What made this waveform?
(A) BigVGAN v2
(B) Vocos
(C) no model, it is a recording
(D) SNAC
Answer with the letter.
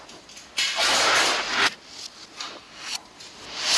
C